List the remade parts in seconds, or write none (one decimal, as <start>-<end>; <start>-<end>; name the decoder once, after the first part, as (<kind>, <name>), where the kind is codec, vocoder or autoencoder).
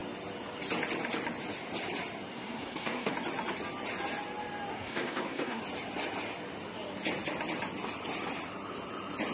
2.3-3.1 (codec, SNAC); 4.7-5.6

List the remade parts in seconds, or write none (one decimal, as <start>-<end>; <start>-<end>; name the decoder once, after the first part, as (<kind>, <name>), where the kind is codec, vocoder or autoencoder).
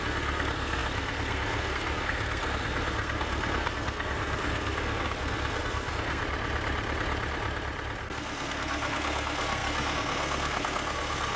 0.0-6.2 (codec, SNAC); 8.0-11.4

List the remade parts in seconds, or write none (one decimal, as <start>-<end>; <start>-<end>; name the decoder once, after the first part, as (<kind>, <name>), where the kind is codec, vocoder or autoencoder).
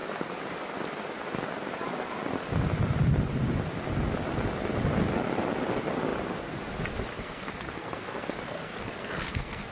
7.1-9.7 (codec, SNAC)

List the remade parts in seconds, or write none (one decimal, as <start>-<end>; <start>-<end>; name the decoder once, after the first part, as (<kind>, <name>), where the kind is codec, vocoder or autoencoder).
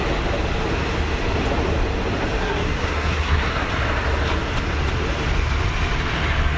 2.4-3.7 (codec, SNAC)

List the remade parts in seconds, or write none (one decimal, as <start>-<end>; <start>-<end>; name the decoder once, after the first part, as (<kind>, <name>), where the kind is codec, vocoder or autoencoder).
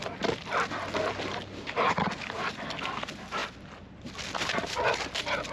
none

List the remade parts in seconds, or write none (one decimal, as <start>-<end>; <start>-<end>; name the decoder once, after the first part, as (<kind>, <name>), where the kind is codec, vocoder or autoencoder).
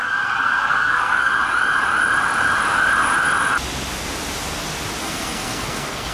0.0-1.3 (codec, SNAC); 5.0-6.1